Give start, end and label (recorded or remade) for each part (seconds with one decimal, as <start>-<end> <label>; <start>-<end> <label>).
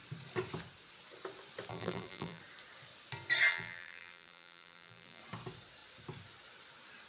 0.0-1.7 recorded; 1.7-2.4 remade; 2.4-3.5 recorded; 3.5-5.2 remade; 5.2-7.1 recorded